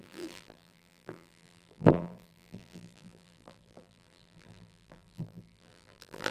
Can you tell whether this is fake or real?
fake